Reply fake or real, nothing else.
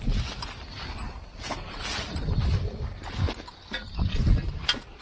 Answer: real